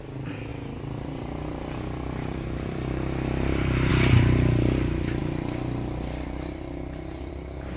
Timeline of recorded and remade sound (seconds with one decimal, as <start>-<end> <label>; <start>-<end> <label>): 0.0-0.5 recorded; 0.5-3.9 remade; 3.9-7.8 recorded